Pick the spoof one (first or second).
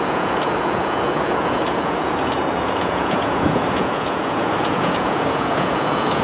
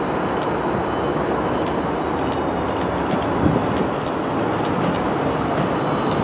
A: first